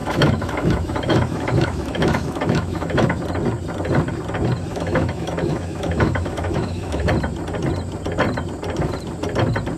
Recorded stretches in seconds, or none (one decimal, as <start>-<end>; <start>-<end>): 3.2-4.7; 7.1-9.8